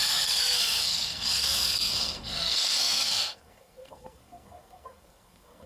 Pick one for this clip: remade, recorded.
remade